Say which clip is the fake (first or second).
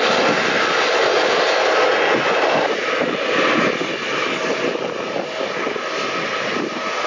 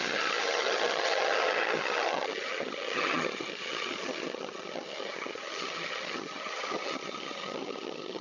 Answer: second